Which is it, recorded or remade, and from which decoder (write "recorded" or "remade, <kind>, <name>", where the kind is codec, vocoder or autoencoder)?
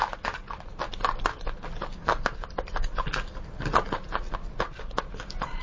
recorded